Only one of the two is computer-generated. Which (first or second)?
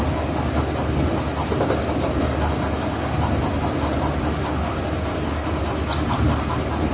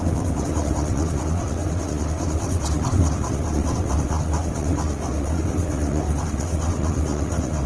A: second